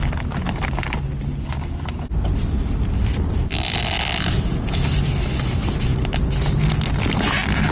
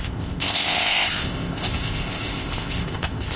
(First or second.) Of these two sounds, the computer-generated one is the second